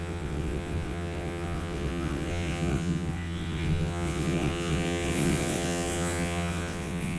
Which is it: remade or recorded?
remade